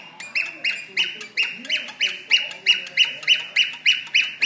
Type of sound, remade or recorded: recorded